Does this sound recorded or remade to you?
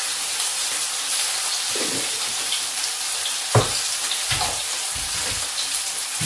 remade